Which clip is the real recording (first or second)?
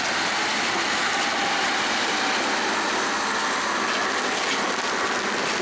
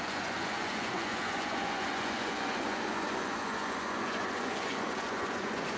first